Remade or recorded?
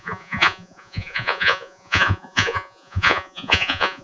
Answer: remade